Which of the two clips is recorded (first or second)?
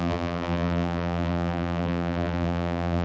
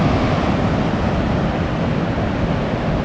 second